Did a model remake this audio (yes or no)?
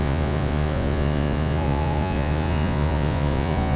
yes